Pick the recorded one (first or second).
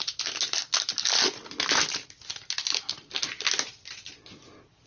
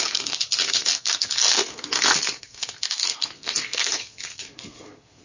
first